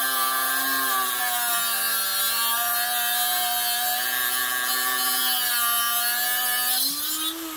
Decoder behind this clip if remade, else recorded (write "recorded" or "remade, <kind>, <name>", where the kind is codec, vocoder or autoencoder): recorded